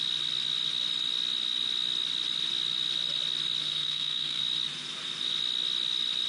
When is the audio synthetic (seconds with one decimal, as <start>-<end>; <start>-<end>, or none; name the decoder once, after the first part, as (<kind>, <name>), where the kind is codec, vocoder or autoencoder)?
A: 3.6-4.4 (codec, SNAC)